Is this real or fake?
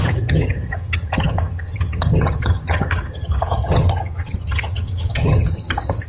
fake